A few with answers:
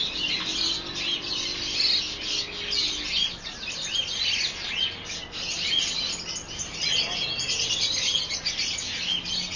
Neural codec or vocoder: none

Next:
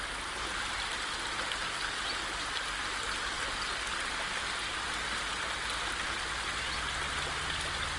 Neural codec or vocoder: none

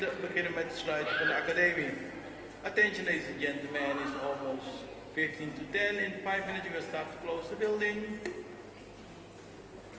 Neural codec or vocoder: none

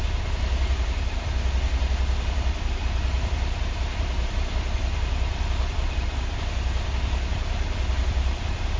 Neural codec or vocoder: vocoder, BigVGAN v2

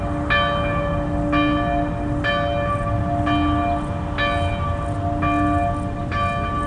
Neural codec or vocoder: none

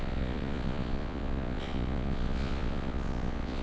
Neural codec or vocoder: vocoder, Vocos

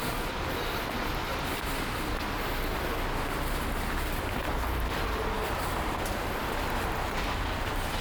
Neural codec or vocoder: vocoder, BigVGAN v2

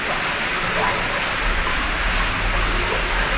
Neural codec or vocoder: none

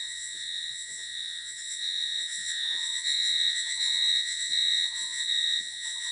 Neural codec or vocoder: vocoder, Vocos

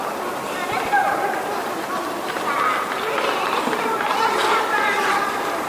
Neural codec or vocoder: none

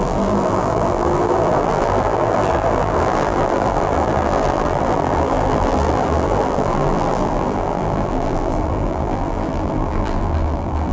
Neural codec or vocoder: vocoder, BigVGAN v2